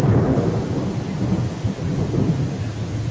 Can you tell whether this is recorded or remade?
recorded